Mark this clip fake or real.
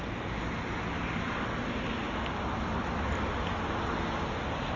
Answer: real